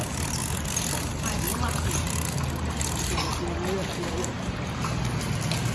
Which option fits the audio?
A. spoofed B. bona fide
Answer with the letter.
B